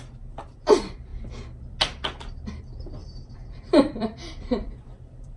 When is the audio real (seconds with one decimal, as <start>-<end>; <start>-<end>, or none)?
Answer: 0.0-3.0